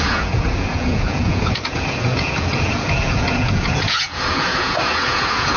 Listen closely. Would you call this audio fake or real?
fake